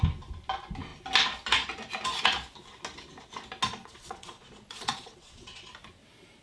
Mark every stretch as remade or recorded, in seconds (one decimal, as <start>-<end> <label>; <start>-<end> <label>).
0.0-3.8 recorded; 3.8-5.7 remade; 5.7-6.4 recorded